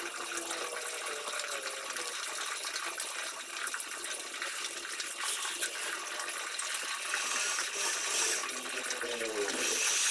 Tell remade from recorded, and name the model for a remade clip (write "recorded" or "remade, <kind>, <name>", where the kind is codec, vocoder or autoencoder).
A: recorded